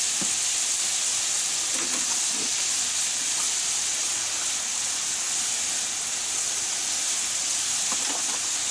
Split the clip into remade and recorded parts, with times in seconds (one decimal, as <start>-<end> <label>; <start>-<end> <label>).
0.0-8.7 recorded